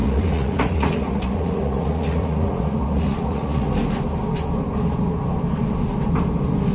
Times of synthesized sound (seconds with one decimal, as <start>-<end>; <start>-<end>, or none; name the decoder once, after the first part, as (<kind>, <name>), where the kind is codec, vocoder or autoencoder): 0.0-3.7 (vocoder, Vocos)